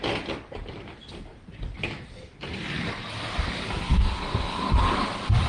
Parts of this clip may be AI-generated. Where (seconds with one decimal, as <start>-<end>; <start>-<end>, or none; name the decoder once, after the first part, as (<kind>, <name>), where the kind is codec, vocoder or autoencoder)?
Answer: none